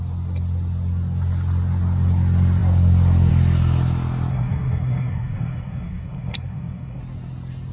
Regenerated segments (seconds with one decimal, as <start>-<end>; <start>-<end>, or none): 4.3-7.0